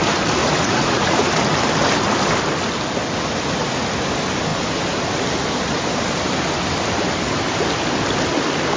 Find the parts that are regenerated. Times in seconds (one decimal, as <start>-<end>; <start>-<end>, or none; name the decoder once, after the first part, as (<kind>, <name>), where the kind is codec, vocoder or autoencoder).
0.4-1.3 (vocoder, Vocos)